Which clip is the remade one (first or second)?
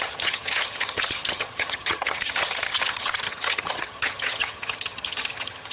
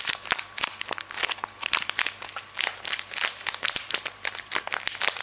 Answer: first